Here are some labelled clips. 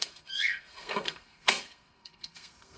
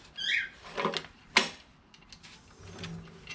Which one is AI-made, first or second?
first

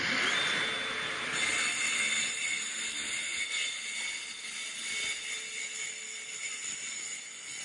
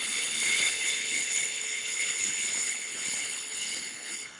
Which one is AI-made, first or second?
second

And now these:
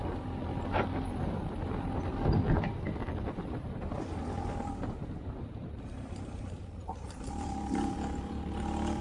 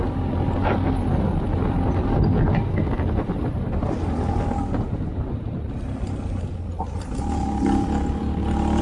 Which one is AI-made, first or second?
first